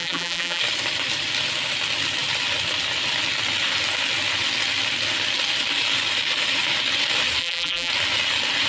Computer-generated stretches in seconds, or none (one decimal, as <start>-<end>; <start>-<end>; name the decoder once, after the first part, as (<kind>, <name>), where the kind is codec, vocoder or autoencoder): 0.0-0.6 (vocoder, BigVGAN v2); 7.4-7.9